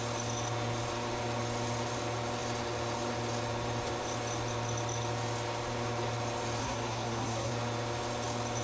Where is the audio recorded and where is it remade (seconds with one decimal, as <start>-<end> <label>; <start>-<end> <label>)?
0.0-6.6 recorded; 6.6-7.5 remade; 7.5-8.6 recorded